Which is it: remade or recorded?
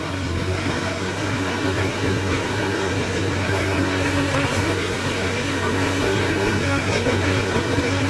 remade